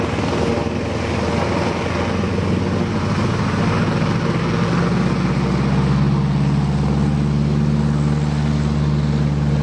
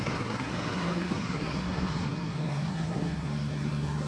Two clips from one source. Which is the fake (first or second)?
second